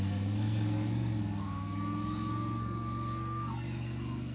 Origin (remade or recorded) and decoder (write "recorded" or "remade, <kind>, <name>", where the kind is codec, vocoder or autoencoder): remade, codec, SNAC